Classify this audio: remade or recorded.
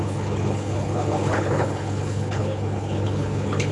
remade